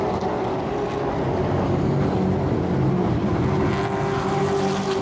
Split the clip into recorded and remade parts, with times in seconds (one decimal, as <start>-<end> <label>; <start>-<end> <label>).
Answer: 0.0-5.0 recorded

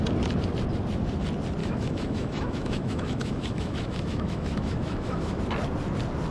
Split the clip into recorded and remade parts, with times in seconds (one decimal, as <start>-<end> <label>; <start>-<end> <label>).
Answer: 0.0-1.6 recorded; 1.6-5.4 remade; 5.4-6.3 recorded

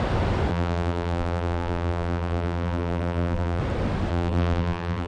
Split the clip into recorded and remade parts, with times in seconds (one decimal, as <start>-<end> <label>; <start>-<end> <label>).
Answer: 0.0-0.5 recorded; 0.5-3.6 remade; 3.6-4.1 recorded; 4.1-5.1 remade

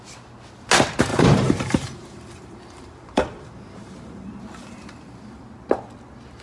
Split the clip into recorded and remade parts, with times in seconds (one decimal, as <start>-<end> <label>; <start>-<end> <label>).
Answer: 0.0-1.1 recorded; 1.1-4.4 remade; 4.4-6.4 recorded

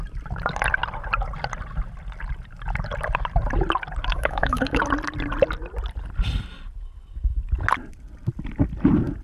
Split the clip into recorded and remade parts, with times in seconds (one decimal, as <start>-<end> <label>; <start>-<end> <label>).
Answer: 0.0-4.1 recorded; 4.1-4.8 remade; 4.8-9.2 recorded